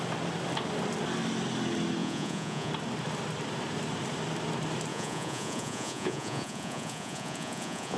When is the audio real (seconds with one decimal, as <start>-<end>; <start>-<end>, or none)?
0.0-2.0; 2.7-4.9